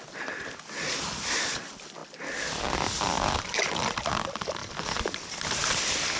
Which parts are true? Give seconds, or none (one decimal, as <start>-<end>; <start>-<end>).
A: 0.0-6.2